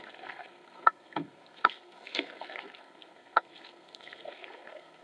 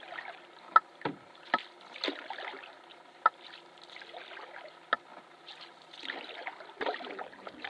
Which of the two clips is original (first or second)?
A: second